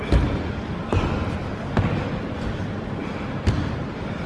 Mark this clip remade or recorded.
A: recorded